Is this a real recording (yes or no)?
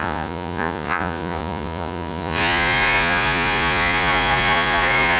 no